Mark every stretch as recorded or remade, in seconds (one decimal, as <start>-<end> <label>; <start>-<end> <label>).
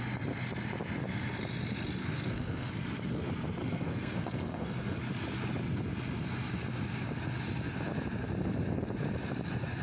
0.0-2.0 recorded; 2.0-2.7 remade; 2.7-3.6 recorded; 3.6-5.0 remade; 5.0-9.8 recorded